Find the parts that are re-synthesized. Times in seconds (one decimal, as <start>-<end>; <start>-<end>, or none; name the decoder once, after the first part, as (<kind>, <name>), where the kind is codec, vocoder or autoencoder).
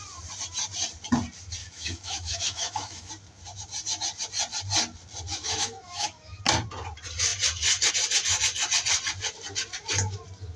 1.6-3.1 (autoencoder, DAC-VAE); 5.3-6.4